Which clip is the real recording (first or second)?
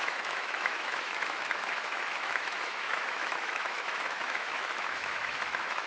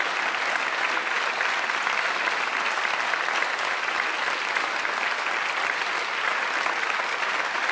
second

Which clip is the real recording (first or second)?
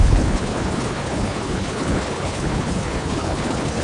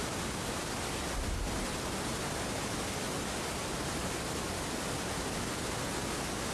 second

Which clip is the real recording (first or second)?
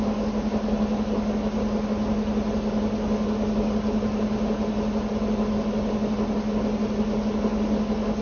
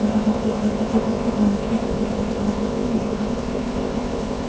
first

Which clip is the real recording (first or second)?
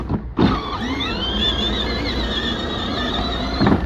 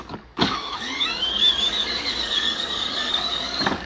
first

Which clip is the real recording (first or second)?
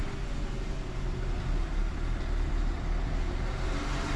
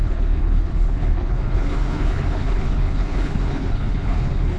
first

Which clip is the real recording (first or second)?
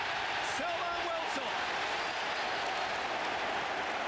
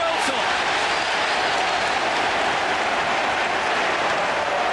first